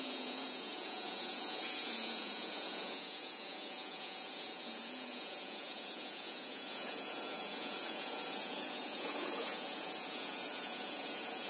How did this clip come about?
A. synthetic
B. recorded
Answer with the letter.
A